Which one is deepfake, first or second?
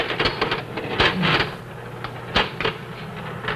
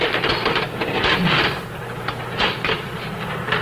second